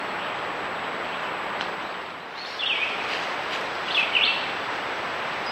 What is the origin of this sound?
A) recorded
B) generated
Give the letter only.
A